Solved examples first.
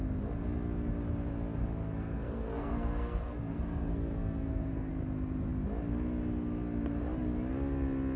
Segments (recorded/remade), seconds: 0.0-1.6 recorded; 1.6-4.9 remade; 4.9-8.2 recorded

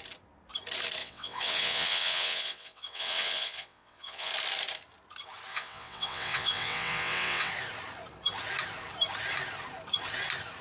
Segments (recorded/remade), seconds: 0.0-1.0 recorded; 1.0-4.3 remade; 4.3-5.5 recorded; 5.5-7.5 remade; 7.5-10.6 recorded